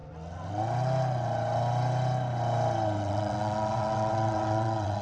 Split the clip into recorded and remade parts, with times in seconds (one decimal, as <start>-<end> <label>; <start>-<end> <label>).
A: 0.0-3.0 recorded; 3.0-5.0 remade